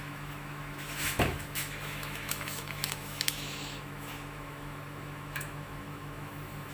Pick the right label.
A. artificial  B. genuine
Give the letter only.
A